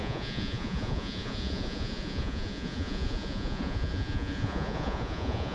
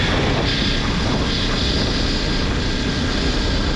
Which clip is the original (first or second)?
second